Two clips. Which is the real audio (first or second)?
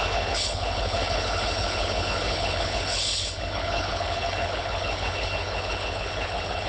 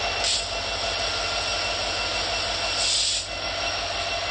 second